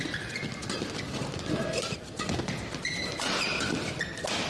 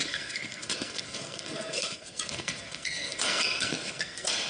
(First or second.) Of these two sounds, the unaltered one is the first